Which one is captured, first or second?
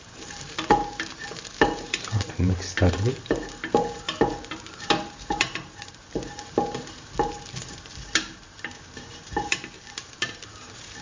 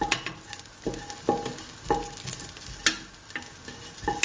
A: second